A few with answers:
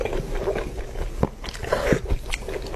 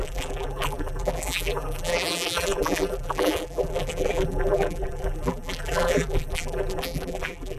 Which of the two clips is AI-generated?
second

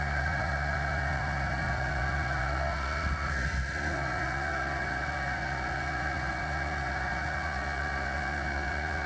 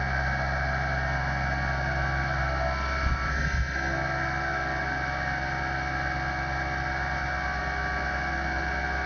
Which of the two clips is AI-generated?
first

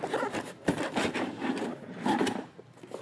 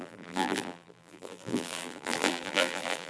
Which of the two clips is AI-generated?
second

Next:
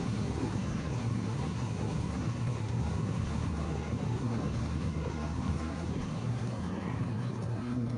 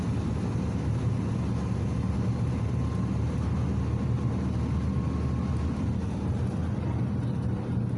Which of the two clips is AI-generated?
first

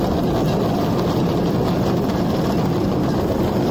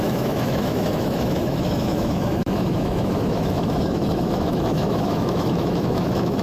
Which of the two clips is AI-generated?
second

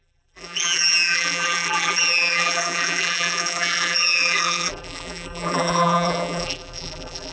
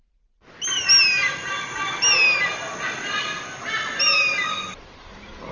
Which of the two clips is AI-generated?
first